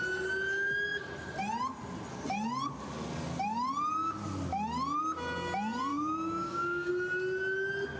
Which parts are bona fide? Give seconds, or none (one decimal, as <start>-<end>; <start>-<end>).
0.0-5.9; 6.9-8.0